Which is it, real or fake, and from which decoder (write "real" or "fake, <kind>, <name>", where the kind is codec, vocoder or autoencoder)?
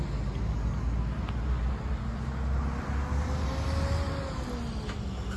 real